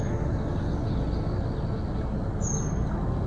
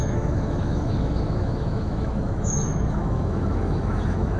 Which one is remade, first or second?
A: second